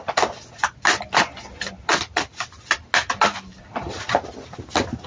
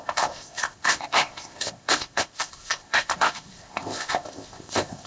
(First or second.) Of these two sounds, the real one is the first